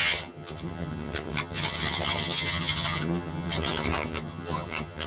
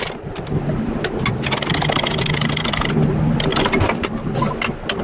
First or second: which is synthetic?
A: first